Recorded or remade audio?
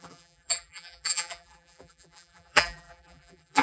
remade